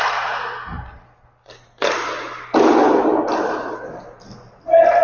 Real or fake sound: real